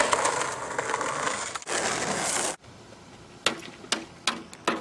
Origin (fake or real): real